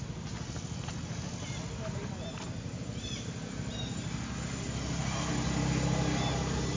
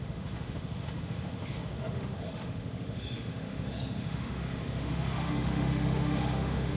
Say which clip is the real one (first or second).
first